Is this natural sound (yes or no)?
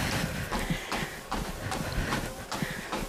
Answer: yes